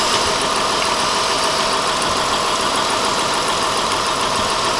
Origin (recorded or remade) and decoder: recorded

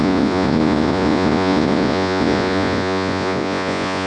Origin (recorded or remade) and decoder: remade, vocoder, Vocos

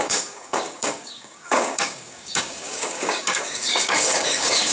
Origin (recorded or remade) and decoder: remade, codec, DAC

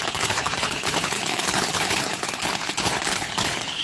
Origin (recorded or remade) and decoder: remade, codec, HILCodec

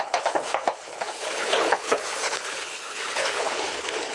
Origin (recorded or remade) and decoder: remade, codec, HILCodec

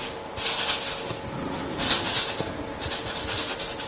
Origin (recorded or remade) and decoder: recorded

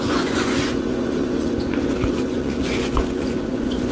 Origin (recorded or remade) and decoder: remade, vocoder, Vocos